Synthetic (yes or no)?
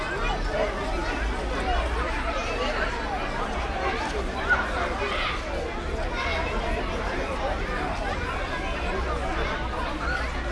no